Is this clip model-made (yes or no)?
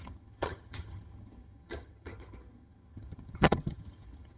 yes